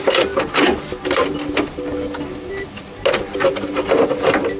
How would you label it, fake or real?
real